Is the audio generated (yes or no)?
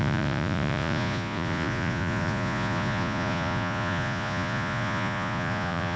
yes